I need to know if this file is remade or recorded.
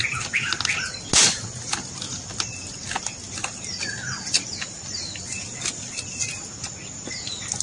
recorded